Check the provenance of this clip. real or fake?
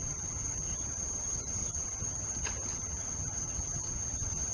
fake